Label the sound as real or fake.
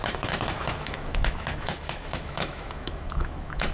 fake